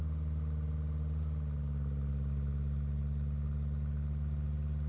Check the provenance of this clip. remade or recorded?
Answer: recorded